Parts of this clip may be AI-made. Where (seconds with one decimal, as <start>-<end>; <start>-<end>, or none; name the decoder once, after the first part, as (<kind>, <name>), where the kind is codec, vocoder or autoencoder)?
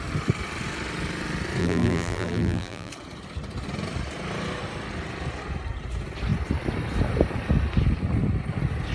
1.6-2.9 (vocoder, BigVGAN v2)